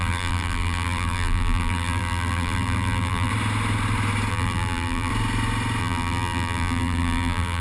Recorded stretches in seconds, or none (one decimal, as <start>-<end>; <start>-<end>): 3.3-4.3; 5.1-5.8